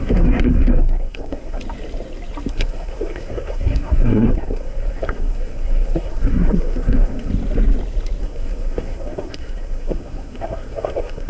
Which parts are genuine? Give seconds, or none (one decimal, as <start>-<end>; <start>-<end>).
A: 1.6-2.5; 7.3-8.2